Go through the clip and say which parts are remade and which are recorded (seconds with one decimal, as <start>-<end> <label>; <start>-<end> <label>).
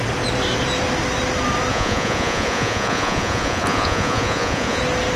0.0-1.7 recorded; 1.7-4.8 remade; 4.8-5.2 recorded